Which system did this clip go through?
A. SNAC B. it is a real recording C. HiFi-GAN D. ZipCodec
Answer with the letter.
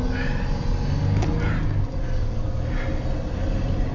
B